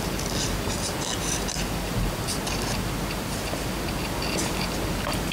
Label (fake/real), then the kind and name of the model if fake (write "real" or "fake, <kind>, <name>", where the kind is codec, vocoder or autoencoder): real